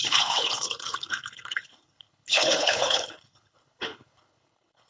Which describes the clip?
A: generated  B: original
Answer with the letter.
A